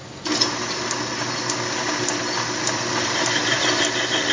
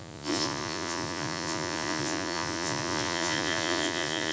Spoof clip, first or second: second